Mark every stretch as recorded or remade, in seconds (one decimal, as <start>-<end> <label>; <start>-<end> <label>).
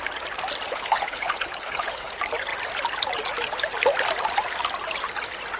0.0-0.7 recorded; 0.7-2.1 remade; 2.1-5.6 recorded